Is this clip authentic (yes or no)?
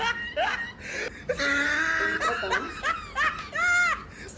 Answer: yes